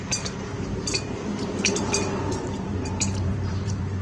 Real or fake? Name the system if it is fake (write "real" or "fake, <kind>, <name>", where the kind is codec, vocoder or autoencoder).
fake, vocoder, BigVGAN v2